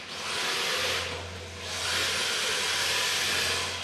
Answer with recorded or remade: recorded